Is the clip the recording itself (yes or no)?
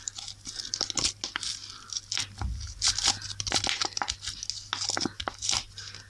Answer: yes